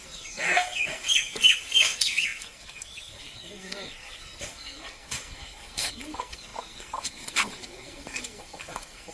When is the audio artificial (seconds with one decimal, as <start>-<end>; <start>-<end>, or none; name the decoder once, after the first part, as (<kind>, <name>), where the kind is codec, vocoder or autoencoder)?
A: 0.0-9.1 (codec, SNAC)